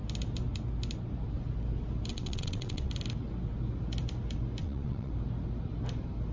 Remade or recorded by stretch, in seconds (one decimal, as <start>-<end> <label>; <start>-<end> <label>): 0.0-2.1 recorded; 2.1-2.9 remade; 2.9-4.6 recorded; 4.6-5.1 remade; 5.1-6.3 recorded